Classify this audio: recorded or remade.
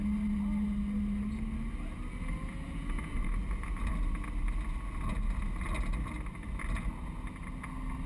recorded